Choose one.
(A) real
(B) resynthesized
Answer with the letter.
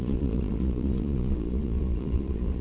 B